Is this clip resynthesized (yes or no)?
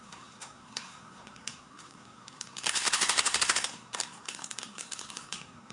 yes